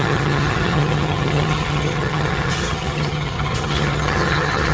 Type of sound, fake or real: fake